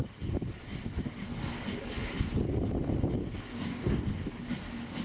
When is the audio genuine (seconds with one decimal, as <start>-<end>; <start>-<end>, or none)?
0.0-3.2; 4.3-5.0